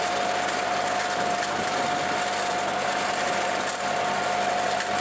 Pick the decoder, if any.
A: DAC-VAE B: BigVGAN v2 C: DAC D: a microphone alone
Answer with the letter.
D